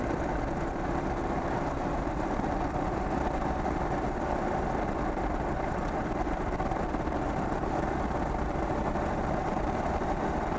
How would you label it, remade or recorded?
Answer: remade